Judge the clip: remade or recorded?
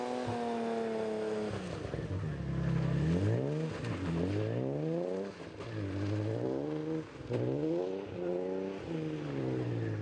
recorded